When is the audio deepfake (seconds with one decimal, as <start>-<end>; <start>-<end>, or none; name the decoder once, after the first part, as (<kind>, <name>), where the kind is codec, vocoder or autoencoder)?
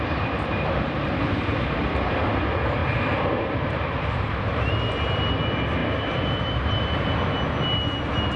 2.8-4.7 (vocoder, BigVGAN v2); 5.8-6.8